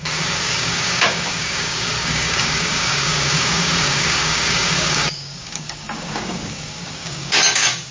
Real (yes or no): no